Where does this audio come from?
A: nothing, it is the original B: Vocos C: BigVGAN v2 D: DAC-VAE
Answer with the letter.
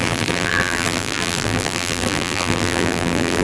C